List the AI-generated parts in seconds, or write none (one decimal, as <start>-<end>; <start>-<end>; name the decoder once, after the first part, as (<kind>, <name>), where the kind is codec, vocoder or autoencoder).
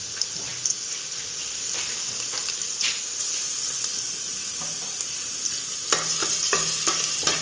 none